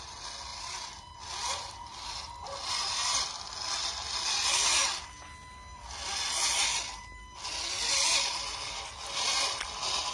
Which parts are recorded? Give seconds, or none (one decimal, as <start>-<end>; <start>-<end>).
0.0-10.1